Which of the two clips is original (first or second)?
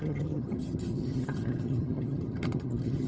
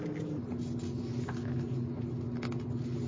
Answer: second